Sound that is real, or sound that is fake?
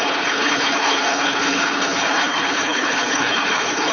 fake